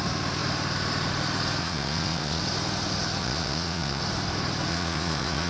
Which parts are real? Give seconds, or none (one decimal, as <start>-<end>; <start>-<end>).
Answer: 0.0-1.6; 2.4-3.2; 4.0-4.7